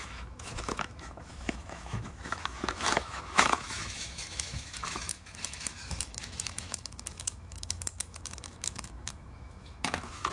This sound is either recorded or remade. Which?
remade